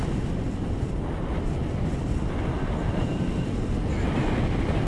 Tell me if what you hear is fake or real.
real